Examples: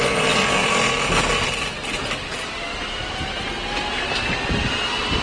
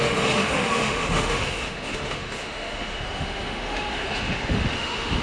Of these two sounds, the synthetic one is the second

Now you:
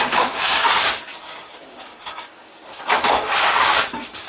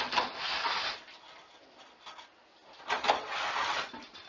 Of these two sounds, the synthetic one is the first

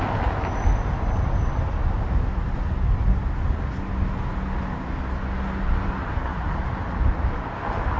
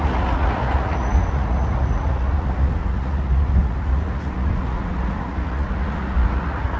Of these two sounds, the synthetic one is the second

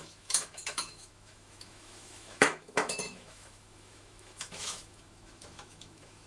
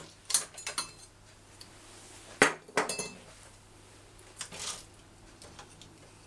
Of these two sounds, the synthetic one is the first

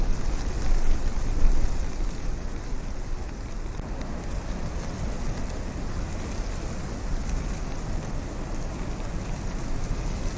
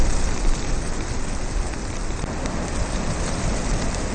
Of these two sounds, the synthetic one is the second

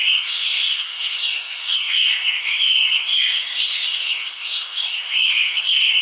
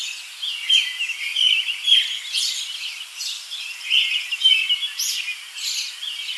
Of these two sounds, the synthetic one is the first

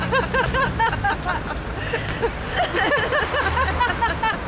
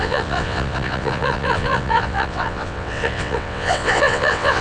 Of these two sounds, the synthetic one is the second